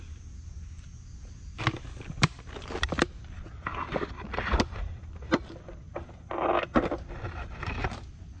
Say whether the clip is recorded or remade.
recorded